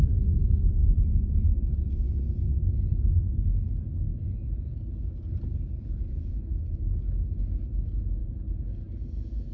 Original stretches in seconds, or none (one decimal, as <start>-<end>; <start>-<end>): 0.0-9.5